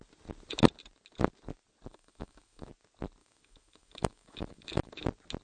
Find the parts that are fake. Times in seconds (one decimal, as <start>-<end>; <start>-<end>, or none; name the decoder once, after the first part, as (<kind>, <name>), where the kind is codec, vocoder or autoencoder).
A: 1.9-2.7 (autoencoder, DAC-VAE); 3.2-4.9